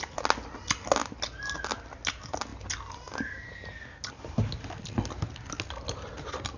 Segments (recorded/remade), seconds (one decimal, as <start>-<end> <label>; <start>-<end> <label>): 0.0-6.6 recorded